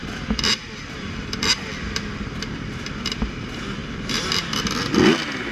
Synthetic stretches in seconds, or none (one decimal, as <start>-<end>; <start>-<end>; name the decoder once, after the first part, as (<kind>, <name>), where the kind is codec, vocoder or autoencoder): 0.0-1.7 (vocoder, BigVGAN v2)